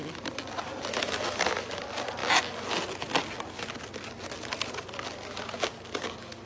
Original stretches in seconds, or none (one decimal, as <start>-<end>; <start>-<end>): 0.0-6.5